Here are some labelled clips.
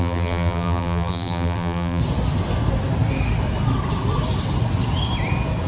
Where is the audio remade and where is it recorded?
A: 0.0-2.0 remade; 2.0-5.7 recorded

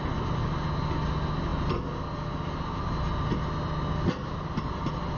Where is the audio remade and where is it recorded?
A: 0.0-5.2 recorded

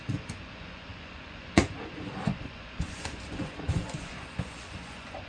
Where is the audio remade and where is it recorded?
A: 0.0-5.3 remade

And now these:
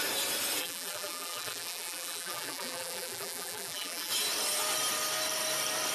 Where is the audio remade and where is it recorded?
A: 0.0-0.6 recorded; 0.6-4.1 remade; 4.1-5.9 recorded

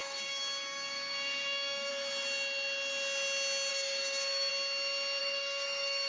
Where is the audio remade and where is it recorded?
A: 0.0-1.9 remade; 1.9-3.7 recorded; 3.7-4.5 remade; 4.5-5.2 recorded; 5.2-6.1 remade

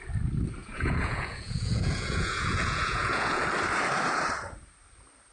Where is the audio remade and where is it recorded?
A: 0.0-0.6 recorded; 0.6-3.4 remade; 3.4-5.3 recorded

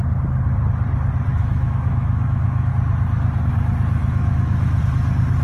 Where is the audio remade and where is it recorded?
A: 0.0-1.3 recorded; 1.3-2.7 remade; 2.7-4.0 recorded; 4.0-4.8 remade; 4.8-5.4 recorded

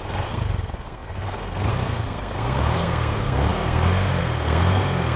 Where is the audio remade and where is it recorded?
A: 0.0-5.2 remade